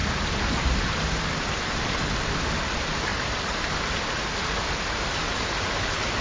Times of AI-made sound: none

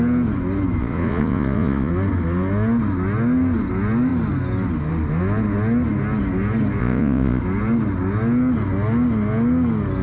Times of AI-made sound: 0.8-1.9 (vocoder, Vocos); 6.8-7.4

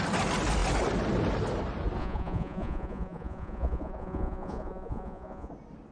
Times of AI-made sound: 2.0-5.5 (vocoder, Vocos)

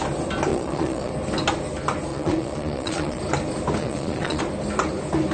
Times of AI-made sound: 0.5-1.1 (vocoder, Vocos); 2.1-3.2; 3.8-4.4

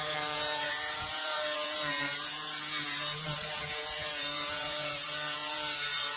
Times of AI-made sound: 0.0-6.2 (vocoder, Vocos)

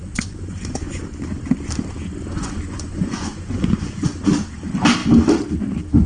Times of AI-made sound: 0.0-1.0 (vocoder, Vocos); 2.3-4.3